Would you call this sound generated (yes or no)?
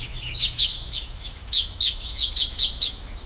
yes